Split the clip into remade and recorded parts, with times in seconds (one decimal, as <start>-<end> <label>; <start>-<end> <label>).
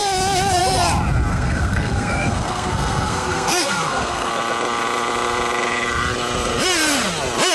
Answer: 0.0-1.3 recorded; 1.3-4.3 remade; 4.3-7.5 recorded